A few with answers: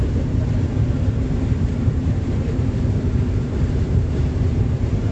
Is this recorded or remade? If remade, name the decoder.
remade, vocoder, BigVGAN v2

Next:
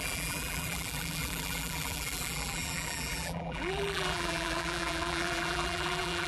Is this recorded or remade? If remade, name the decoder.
remade, vocoder, BigVGAN v2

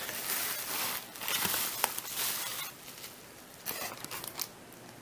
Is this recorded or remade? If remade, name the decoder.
recorded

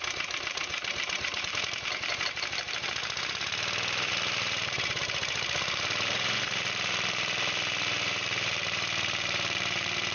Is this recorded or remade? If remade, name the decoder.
remade, vocoder, BigVGAN v2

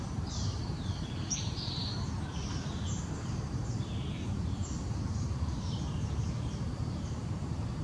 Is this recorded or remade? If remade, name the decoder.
remade, vocoder, BigVGAN v2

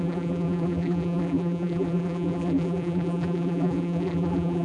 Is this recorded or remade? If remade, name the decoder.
remade, vocoder, BigVGAN v2